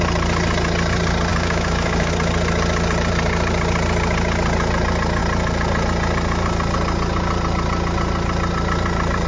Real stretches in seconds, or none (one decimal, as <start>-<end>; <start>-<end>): 0.0-1.3; 2.1-9.3